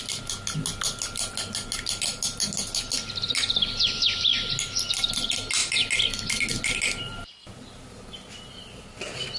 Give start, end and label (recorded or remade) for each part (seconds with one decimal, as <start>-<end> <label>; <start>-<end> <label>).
0.0-9.4 recorded